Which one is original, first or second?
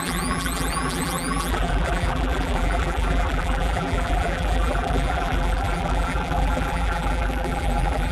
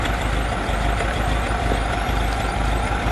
second